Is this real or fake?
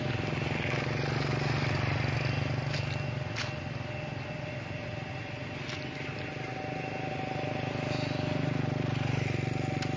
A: real